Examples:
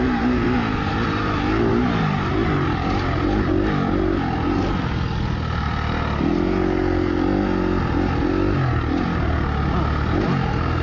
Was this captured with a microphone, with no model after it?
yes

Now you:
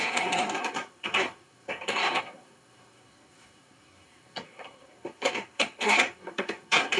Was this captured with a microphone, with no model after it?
no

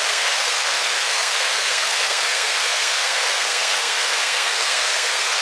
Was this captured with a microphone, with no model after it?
no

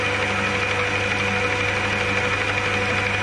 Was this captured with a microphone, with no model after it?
yes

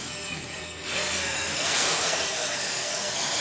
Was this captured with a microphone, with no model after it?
no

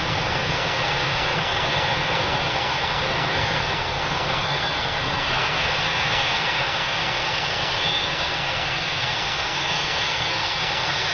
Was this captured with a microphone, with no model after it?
no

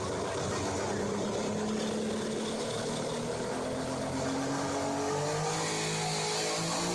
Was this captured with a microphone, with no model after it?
yes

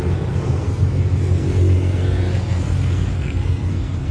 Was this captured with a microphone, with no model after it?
no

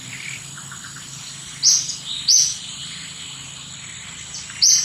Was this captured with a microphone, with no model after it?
yes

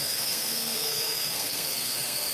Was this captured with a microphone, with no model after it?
no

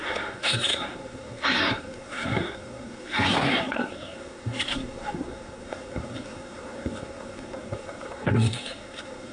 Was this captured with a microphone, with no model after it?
no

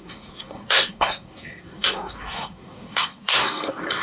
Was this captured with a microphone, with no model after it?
no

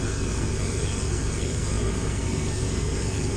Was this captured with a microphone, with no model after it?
no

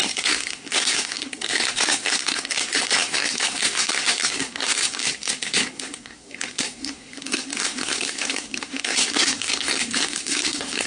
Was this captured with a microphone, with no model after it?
no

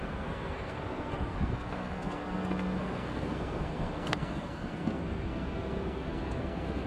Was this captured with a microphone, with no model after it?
no